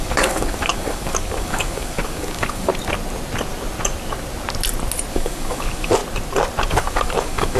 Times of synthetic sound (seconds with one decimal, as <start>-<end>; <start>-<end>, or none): 0.0-2.7; 5.1-6.0; 6.7-7.6